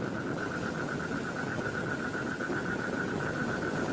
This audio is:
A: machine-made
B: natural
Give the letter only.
B